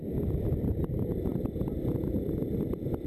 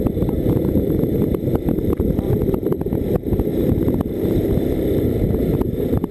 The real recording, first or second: first